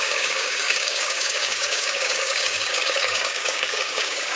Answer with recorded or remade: remade